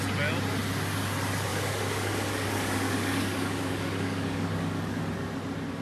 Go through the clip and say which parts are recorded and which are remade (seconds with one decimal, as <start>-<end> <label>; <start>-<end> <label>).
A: 0.0-1.5 recorded; 1.5-5.0 remade; 5.0-5.8 recorded

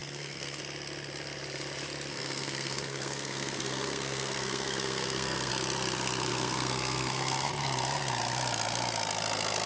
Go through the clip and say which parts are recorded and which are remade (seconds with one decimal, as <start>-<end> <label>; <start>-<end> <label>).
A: 0.0-0.6 remade; 0.6-2.1 recorded; 2.1-5.5 remade; 5.5-6.3 recorded; 6.3-7.5 remade; 7.5-9.7 recorded

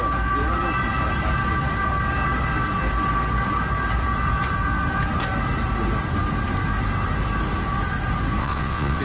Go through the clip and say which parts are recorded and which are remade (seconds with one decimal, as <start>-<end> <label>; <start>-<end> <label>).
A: 0.0-8.4 recorded; 8.4-9.0 remade